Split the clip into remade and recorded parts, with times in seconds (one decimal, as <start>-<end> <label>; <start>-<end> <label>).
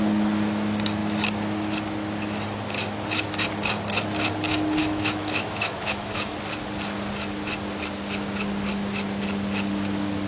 0.0-4.8 recorded; 4.8-6.3 remade; 6.3-10.3 recorded